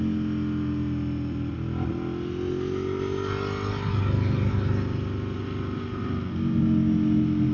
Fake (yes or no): no